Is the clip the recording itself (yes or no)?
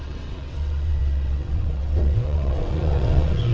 no